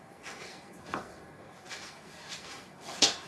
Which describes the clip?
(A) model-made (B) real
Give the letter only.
A